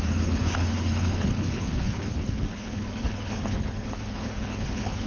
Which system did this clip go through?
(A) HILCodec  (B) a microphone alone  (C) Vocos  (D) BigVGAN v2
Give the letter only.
A